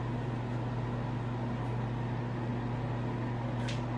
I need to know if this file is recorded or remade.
recorded